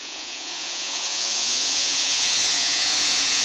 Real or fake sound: fake